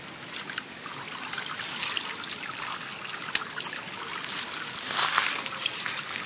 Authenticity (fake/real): real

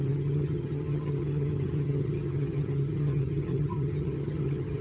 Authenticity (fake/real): fake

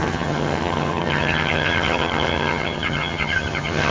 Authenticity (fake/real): fake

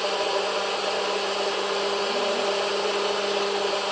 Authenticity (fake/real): real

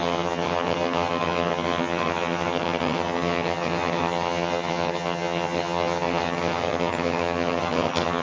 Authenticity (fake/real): fake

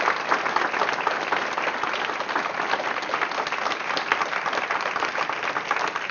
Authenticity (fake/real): real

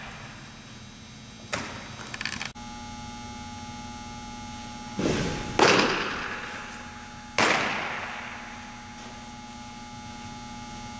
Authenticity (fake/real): real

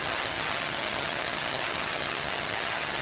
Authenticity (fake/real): fake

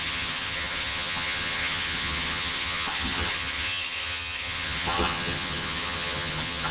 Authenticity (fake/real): fake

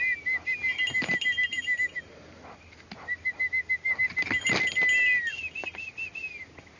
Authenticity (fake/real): real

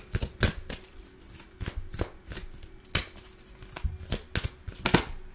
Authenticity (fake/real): real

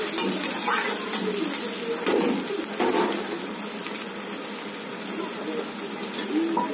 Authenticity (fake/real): real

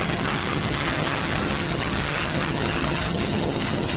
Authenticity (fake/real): fake